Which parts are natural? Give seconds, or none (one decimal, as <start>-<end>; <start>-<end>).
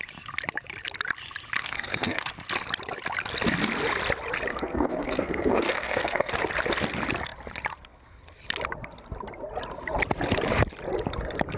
0.0-1.6; 2.3-4.5; 6.3-11.6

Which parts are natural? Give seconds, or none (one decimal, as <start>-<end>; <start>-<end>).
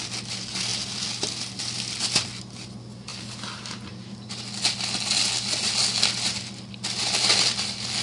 0.0-8.0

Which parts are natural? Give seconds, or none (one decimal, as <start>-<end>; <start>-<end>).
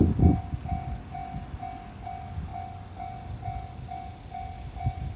0.0-5.2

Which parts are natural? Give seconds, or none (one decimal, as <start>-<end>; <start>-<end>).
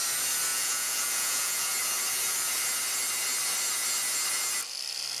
0.0-0.5; 1.7-5.2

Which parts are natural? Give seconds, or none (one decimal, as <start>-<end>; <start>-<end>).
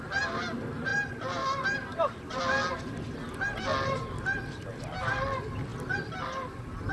0.0-6.9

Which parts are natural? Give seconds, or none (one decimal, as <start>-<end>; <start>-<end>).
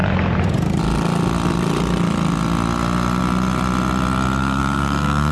0.0-4.4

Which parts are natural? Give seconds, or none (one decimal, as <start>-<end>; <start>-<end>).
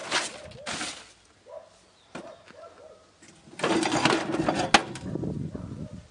0.0-6.1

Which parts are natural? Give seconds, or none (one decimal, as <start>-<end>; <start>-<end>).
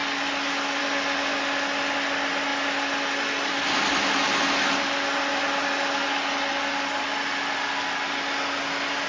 0.0-9.1